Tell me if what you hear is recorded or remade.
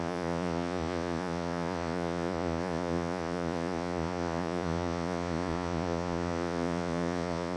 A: remade